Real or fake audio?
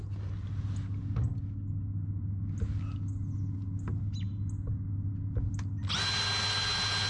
real